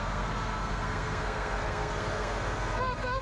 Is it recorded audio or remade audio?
remade